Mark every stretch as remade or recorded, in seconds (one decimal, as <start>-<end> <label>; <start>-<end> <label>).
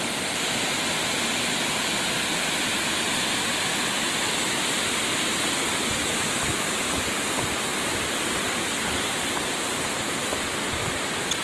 0.0-11.4 recorded